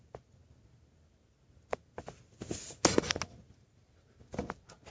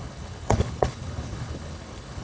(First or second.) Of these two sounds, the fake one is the second